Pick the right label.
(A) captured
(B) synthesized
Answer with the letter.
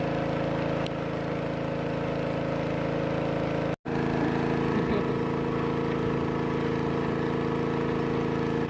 A